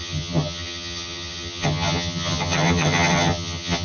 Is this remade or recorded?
remade